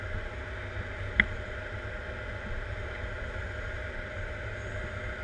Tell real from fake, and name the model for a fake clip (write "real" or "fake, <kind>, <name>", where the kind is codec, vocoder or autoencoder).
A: real